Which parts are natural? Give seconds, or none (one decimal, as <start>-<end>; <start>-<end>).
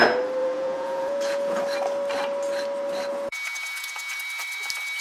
0.0-0.4; 1.6-3.1; 4.2-5.0